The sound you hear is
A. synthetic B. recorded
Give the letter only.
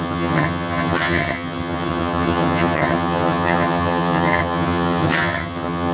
A